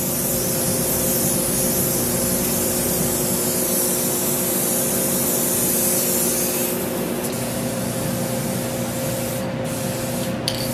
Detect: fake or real real